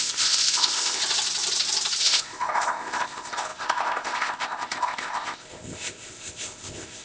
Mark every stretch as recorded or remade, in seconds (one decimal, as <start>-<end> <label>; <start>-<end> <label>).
0.0-1.0 remade; 1.0-2.0 recorded; 2.0-7.0 remade